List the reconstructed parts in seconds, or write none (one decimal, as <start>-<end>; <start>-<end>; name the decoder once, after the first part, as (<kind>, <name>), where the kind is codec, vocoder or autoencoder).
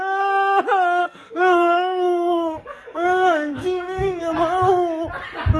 1.0-4.2 (codec, SNAC)